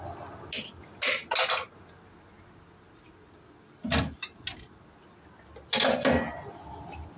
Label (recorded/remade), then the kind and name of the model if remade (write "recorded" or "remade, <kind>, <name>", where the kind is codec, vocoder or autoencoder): recorded